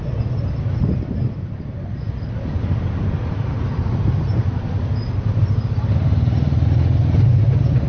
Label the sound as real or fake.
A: real